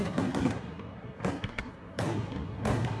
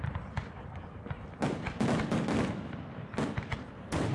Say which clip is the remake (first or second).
first